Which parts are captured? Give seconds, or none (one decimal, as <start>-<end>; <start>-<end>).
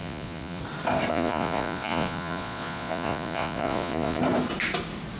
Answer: 0.6-1.1; 4.2-5.2